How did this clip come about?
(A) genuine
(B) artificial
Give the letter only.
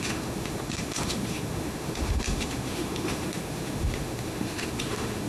B